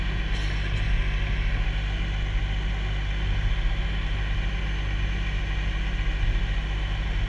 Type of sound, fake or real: real